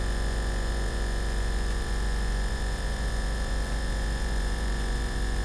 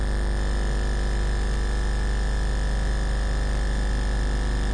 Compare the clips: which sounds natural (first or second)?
second